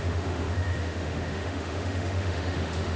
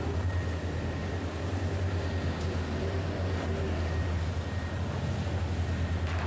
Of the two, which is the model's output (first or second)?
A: first